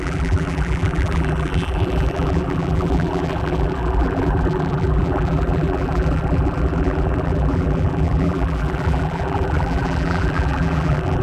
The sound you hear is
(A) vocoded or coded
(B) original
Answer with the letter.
A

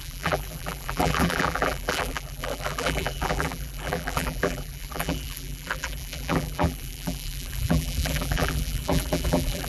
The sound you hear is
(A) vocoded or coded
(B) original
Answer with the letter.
A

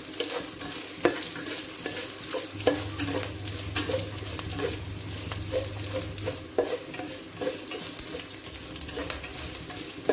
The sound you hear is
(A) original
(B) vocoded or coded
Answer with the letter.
A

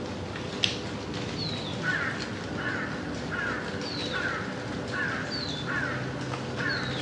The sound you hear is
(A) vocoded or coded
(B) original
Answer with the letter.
B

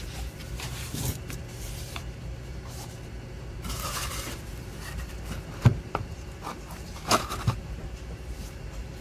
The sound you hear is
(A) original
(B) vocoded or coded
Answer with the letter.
B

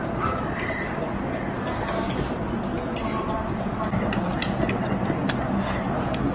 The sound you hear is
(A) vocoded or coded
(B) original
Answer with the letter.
B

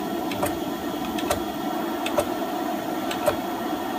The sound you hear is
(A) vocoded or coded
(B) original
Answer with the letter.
B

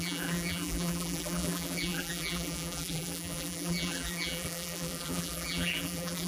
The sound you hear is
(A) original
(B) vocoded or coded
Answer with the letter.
B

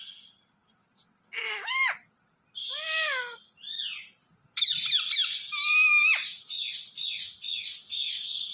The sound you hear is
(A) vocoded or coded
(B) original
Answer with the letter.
B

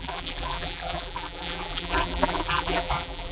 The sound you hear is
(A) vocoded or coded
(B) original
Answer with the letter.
A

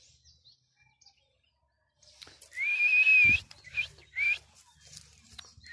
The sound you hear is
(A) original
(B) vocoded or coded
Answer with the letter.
A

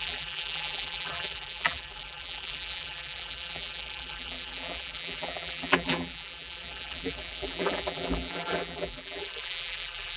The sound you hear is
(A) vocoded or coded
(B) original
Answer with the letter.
A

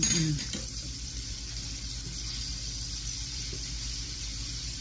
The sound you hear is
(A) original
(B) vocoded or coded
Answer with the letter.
B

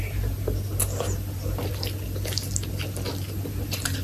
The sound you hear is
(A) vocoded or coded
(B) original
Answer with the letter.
B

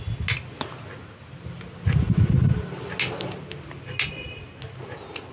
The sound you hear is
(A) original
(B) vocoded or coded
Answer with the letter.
A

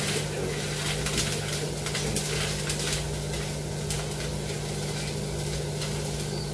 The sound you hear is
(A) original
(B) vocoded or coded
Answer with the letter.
A